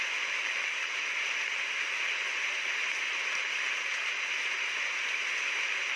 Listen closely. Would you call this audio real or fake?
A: real